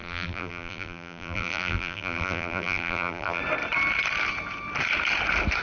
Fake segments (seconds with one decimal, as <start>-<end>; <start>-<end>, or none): 0.0-3.4